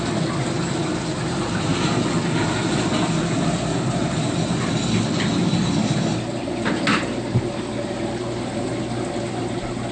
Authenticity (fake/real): real